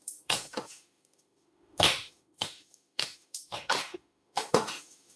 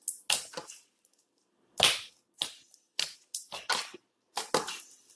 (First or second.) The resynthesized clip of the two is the first